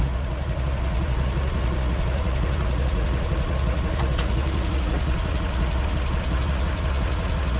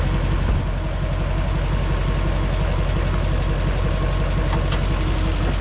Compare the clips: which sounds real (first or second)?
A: second